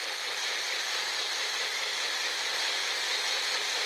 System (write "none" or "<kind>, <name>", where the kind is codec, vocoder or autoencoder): none